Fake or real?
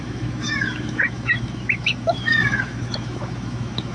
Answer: fake